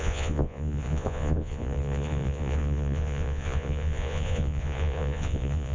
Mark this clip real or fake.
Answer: fake